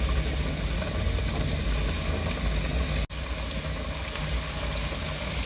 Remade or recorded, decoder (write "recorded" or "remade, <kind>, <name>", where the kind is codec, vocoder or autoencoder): recorded